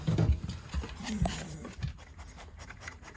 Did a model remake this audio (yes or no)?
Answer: yes